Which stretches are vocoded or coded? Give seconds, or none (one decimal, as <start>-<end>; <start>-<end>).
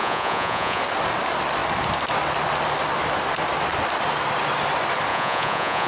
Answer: 0.0-0.8; 5.1-5.9